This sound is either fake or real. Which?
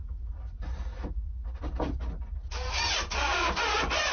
real